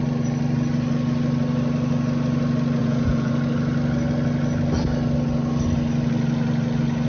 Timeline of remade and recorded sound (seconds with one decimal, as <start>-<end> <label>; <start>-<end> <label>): 0.0-2.8 recorded; 2.8-3.3 remade; 3.3-7.1 recorded